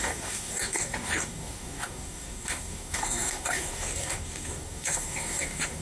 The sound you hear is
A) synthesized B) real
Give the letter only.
A